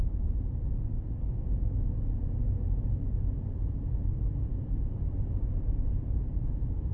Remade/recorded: remade